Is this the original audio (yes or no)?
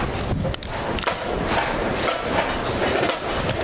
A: yes